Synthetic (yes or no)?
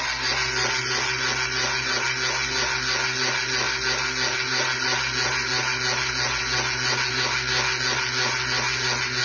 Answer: no